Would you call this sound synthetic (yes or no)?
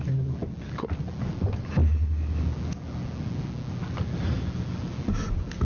no